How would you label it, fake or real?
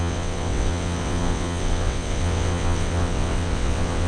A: fake